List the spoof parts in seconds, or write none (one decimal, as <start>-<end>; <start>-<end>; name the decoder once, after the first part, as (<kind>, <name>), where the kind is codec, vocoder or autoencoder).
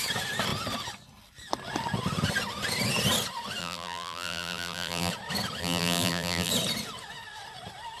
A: 3.6-5.1 (vocoder, BigVGAN v2); 5.6-6.5